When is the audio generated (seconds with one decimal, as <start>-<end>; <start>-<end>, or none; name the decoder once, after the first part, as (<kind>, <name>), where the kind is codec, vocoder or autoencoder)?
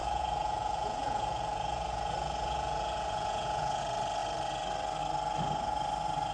0.0-3.8 (vocoder, Vocos)